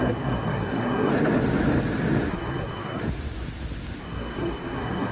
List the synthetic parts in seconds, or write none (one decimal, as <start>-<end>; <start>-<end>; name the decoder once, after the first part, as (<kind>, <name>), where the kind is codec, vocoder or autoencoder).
0.0-1.1 (codec, SNAC); 2.3-3.0; 4.0-5.1